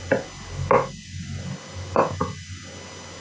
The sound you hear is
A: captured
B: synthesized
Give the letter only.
A